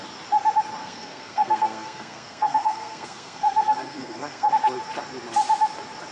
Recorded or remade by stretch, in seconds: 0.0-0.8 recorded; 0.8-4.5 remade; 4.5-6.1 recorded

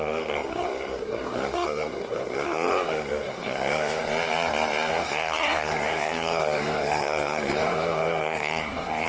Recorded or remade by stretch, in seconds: 0.0-4.0 remade; 4.0-4.9 recorded; 4.9-9.1 remade

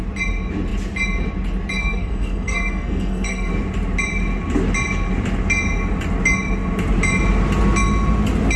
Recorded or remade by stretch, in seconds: 0.0-1.8 recorded; 1.8-3.5 remade; 3.5-8.6 recorded